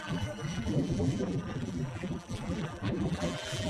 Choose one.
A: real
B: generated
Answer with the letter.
B